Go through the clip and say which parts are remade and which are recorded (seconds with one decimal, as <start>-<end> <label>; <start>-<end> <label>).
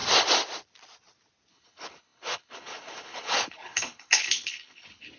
0.0-1.5 recorded; 1.5-5.2 remade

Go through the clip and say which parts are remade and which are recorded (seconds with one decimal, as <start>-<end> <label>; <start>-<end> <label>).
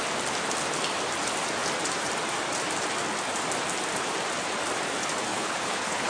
0.0-5.3 recorded; 5.3-6.1 remade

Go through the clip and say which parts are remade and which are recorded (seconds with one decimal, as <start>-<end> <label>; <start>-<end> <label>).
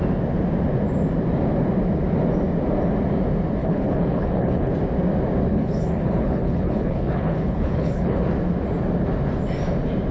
0.0-3.6 recorded; 3.6-4.7 remade; 4.7-5.5 recorded; 5.5-8.2 remade; 8.2-10.1 recorded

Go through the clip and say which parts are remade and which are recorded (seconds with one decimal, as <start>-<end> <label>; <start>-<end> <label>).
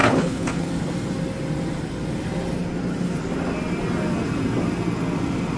0.0-0.7 remade; 0.7-5.6 recorded